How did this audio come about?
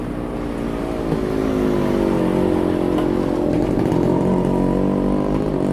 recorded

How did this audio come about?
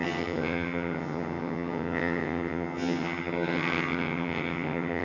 remade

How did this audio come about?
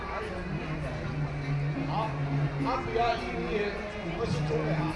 recorded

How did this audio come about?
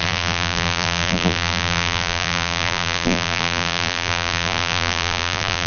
remade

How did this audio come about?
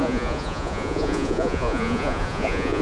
remade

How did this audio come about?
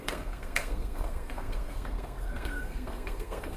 remade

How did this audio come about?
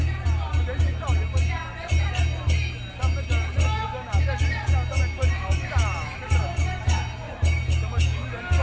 recorded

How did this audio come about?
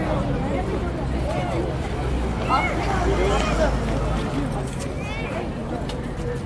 recorded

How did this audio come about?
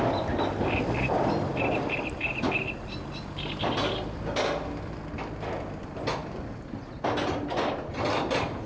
recorded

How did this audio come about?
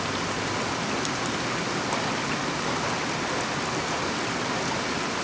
recorded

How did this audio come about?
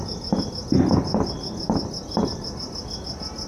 recorded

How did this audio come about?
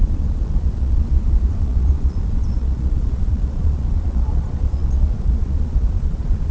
remade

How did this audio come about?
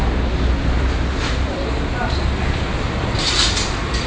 recorded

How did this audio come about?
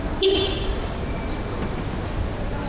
recorded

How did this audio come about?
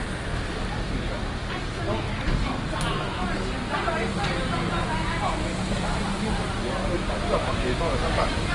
recorded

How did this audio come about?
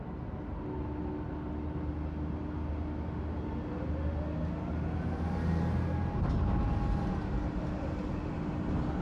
recorded